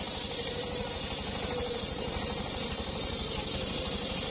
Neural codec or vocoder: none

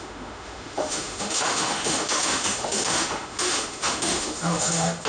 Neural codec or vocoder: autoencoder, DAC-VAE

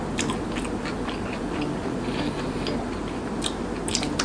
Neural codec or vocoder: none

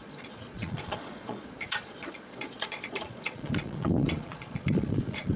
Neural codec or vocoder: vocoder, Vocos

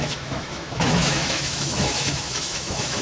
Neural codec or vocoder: autoencoder, DAC-VAE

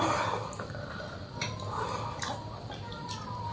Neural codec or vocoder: none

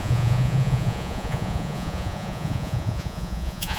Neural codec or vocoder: vocoder, Vocos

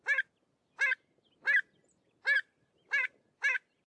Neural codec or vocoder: none